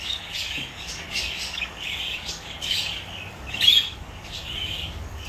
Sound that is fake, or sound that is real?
fake